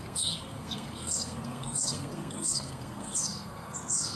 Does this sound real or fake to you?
fake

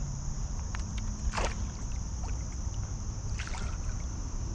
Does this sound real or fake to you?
real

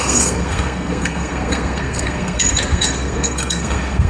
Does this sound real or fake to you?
fake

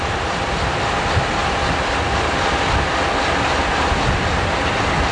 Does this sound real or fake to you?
real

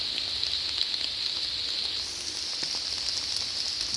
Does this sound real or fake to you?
real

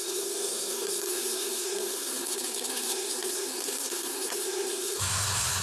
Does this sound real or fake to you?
fake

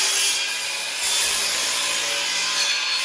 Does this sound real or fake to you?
real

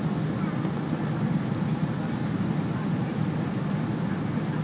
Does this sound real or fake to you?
real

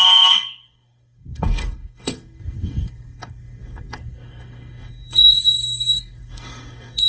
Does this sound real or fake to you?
fake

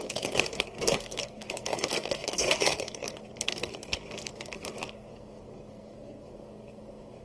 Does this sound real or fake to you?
fake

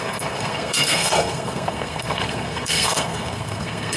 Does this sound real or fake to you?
fake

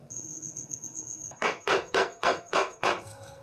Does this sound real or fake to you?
fake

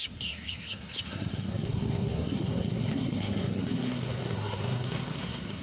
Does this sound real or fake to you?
fake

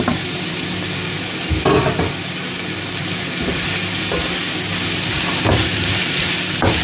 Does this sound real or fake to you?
real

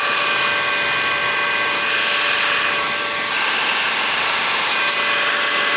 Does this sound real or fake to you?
real